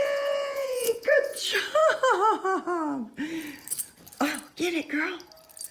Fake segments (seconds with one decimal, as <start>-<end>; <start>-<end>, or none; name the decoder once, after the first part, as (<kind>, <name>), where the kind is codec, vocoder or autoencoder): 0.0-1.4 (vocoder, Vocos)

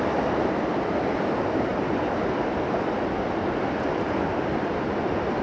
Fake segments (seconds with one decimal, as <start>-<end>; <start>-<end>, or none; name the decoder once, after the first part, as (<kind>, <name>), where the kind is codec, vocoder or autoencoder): none

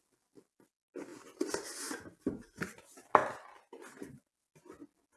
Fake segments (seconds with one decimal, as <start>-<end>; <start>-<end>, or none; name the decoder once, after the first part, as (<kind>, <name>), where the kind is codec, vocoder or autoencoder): none

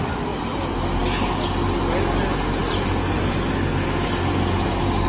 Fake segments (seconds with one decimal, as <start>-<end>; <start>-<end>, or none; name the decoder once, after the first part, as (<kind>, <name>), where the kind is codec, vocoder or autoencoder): none